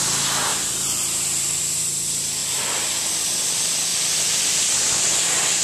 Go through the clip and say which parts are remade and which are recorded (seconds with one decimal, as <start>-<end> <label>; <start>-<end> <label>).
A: 0.0-3.9 recorded; 3.9-4.6 remade; 4.6-5.6 recorded